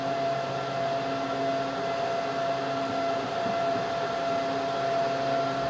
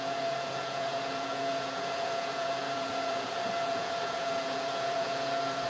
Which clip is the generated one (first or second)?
second